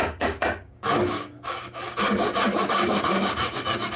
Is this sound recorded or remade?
remade